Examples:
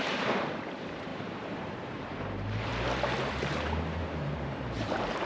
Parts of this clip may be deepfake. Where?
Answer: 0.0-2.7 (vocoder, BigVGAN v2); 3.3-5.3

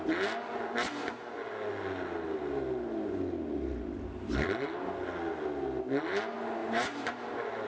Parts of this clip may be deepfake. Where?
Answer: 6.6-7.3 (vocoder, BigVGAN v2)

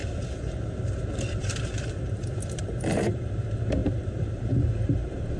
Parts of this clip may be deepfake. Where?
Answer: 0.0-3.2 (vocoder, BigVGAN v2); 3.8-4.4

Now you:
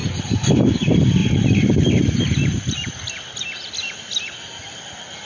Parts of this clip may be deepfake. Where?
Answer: 0.0-0.5 (vocoder, BigVGAN v2); 1.2-3.1

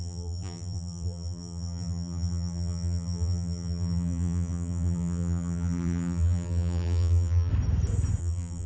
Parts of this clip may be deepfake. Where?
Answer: 0.0-7.5 (vocoder, BigVGAN v2); 8.2-8.7

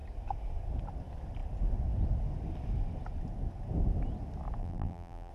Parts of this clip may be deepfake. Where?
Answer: 4.6-5.3 (vocoder, BigVGAN v2)